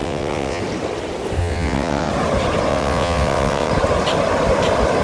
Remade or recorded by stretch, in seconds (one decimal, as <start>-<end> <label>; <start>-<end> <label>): 0.0-0.6 remade; 0.6-1.4 recorded; 1.4-2.1 remade; 2.1-2.7 recorded; 2.7-3.7 remade; 3.7-5.0 recorded